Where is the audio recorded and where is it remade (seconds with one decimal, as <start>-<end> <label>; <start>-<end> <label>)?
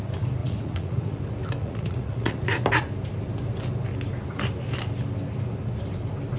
0.0-0.4 recorded; 0.4-1.2 remade; 1.2-1.6 recorded; 1.6-2.4 remade; 2.4-6.4 recorded